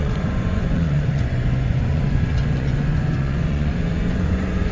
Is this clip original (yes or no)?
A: no